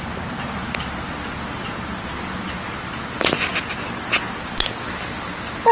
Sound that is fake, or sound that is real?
real